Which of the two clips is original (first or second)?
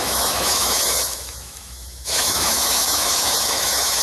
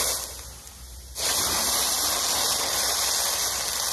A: second